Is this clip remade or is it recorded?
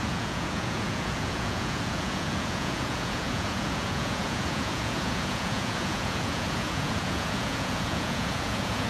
remade